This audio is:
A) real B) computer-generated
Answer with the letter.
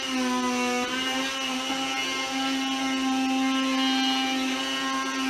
A